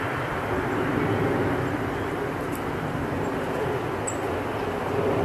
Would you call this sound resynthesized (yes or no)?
no